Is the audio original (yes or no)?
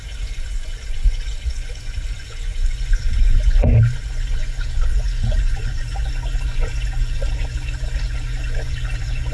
no